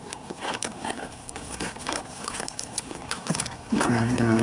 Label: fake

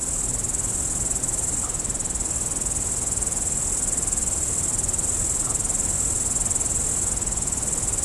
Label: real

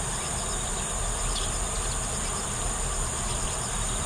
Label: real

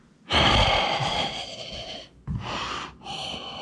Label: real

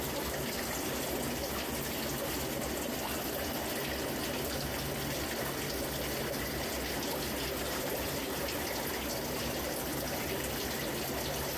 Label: real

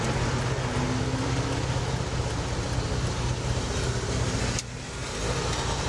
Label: real